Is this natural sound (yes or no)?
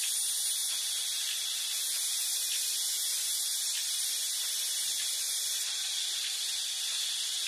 yes